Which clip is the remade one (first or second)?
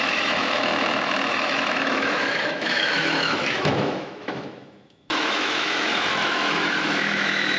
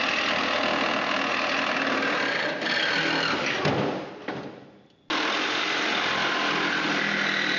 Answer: first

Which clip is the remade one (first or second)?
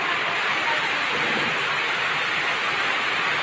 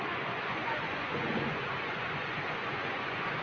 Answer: second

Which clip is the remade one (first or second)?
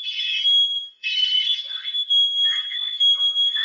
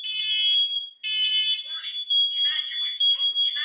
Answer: first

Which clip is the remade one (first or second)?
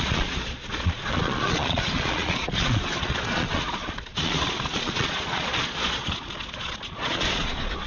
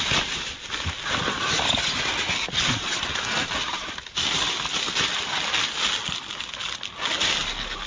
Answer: first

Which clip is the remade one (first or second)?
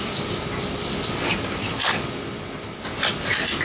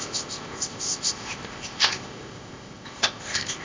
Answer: second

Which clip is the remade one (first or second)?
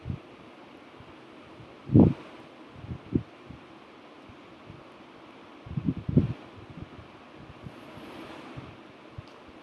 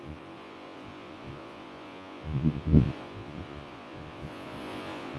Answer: second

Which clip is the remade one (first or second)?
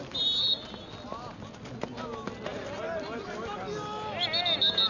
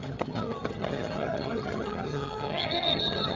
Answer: second